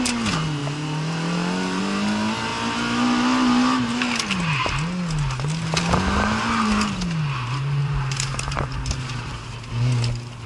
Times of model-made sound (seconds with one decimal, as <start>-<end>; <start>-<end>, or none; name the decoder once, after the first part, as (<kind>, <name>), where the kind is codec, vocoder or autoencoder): 0.6-1.8 (vocoder, BigVGAN v2); 7.8-9.6